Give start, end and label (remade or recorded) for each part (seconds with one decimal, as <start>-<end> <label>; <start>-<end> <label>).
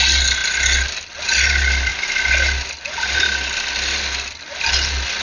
0.0-5.2 recorded